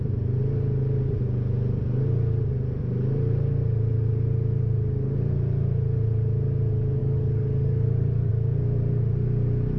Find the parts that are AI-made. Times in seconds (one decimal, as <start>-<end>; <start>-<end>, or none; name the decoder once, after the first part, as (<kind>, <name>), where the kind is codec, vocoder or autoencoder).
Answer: 7.0-8.3 (codec, DAC)